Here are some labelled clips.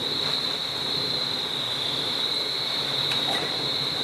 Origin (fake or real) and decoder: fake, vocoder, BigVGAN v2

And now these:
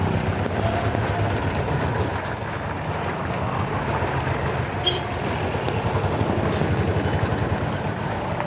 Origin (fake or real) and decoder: real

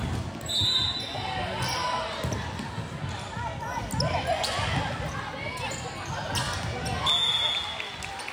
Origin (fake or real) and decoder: real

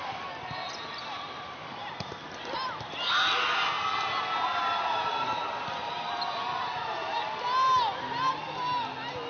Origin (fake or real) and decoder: real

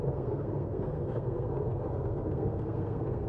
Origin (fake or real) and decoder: fake, codec, SNAC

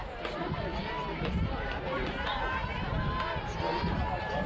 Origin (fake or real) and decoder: real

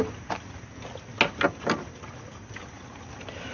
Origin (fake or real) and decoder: real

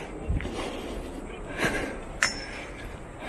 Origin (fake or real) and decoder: real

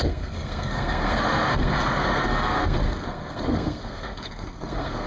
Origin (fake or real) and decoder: fake, codec, SNAC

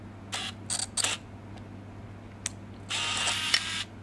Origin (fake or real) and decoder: real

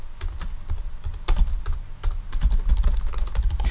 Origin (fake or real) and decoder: real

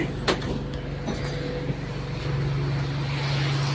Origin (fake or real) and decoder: real